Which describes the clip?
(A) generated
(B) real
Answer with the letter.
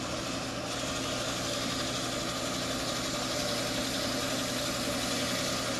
B